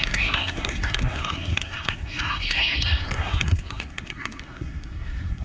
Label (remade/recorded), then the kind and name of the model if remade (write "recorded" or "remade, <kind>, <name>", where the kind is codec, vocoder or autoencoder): remade, codec, SNAC